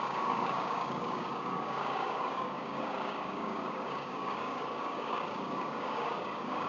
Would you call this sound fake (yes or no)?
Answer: yes